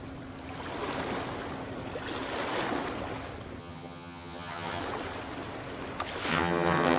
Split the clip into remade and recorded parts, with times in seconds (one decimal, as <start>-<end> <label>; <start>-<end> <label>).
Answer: 0.0-3.6 recorded; 3.6-4.8 remade; 4.8-6.3 recorded; 6.3-7.0 remade